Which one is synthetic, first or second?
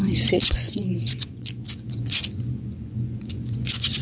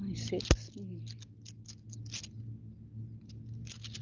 first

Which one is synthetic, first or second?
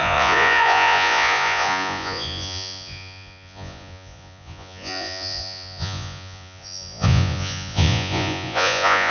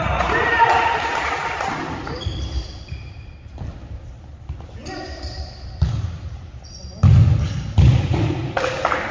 first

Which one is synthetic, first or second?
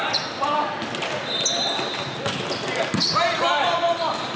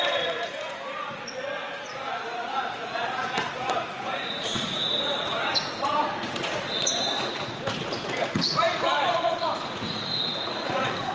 second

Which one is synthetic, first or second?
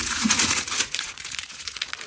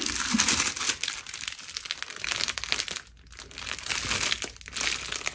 first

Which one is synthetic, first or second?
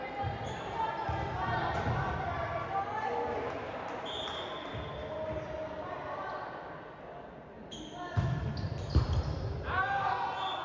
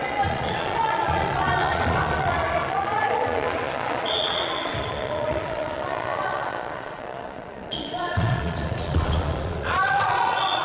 second